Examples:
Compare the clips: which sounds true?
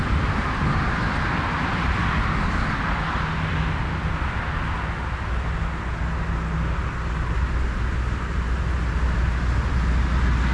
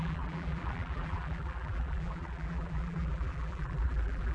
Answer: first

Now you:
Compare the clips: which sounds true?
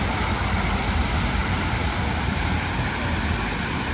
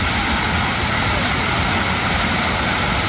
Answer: second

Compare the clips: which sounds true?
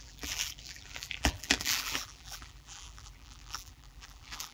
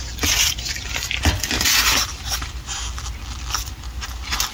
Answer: second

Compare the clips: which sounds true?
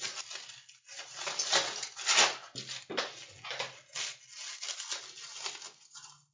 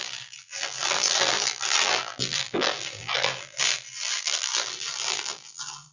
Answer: first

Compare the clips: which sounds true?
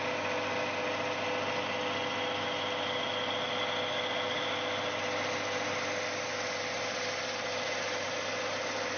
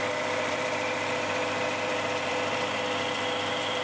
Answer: first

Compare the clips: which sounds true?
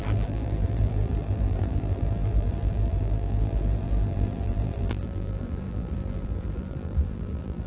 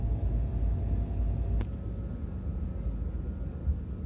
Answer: second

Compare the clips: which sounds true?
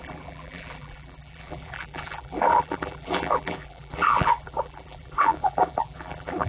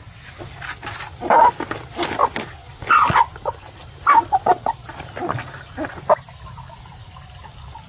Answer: second